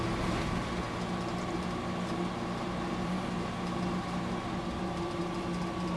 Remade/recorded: recorded